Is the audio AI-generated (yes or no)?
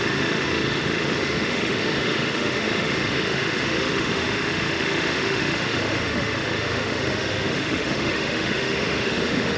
yes